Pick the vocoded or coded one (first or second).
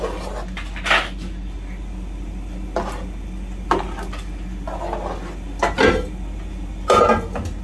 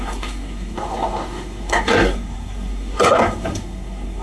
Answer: second